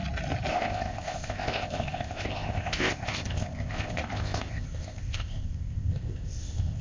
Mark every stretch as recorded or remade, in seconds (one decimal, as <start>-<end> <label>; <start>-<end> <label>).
0.0-0.5 recorded; 0.5-6.8 remade

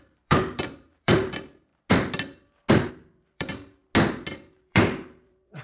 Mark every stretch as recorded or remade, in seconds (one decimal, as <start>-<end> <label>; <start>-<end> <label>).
0.0-1.7 remade; 1.7-2.9 recorded; 2.9-3.8 remade; 3.8-4.5 recorded; 4.5-5.6 remade